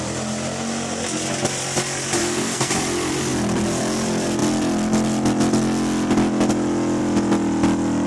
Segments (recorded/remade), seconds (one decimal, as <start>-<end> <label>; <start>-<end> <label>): 0.0-2.2 recorded; 2.2-2.7 remade; 2.7-8.1 recorded